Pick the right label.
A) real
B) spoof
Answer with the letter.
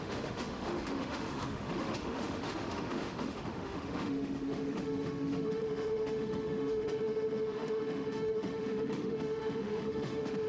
B